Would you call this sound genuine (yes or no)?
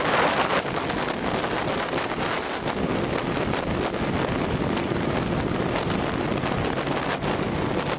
yes